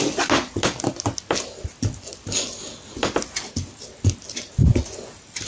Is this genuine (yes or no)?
yes